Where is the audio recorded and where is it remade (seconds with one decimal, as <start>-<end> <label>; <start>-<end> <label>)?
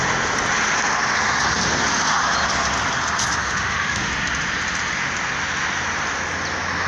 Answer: 0.0-3.4 recorded; 3.4-4.1 remade; 4.1-6.9 recorded